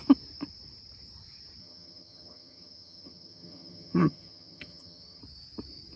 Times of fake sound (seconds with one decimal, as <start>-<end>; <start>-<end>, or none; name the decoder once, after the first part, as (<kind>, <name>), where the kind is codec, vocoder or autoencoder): 1.6-5.2 (vocoder, HiFi-GAN)